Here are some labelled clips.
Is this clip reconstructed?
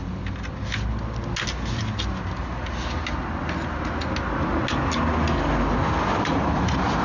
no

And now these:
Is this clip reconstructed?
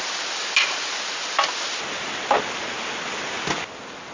no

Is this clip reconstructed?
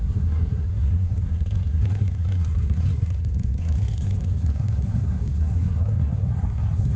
yes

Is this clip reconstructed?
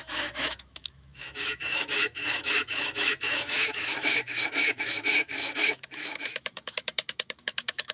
yes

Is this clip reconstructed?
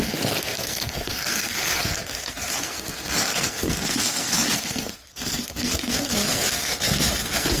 yes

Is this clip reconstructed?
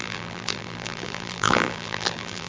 yes